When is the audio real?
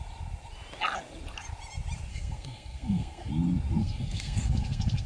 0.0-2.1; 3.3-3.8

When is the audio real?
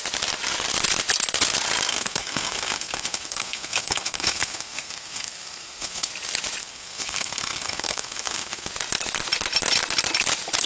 0.0-1.9; 6.1-6.6; 8.7-10.7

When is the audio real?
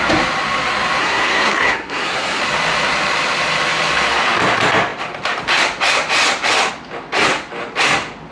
0.0-1.0; 2.4-8.3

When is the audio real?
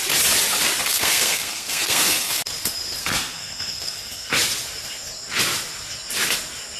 0.0-0.9; 2.4-3.0; 4.3-6.8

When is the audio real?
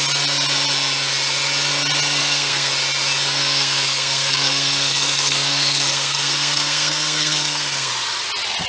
0.0-2.2; 2.7-3.4; 7.9-8.7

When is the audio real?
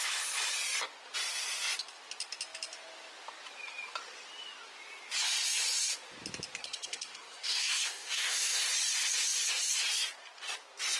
0.0-6.6; 8.7-11.0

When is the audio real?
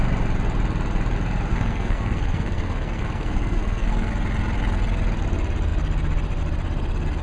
0.0-1.5; 4.1-7.2